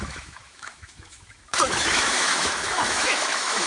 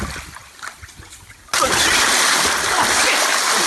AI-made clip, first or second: first